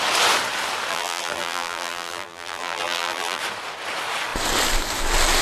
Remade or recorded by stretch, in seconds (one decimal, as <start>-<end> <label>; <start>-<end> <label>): 0.0-0.9 recorded; 0.9-3.4 remade; 3.4-5.4 recorded

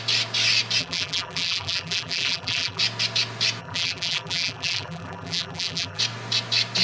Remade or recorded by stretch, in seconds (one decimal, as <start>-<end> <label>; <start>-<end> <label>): 0.0-0.8 recorded; 0.8-2.8 remade; 2.8-3.6 recorded; 3.6-6.0 remade; 6.0-6.8 recorded